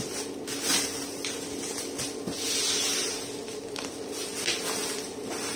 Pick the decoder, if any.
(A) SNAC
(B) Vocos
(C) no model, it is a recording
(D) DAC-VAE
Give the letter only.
C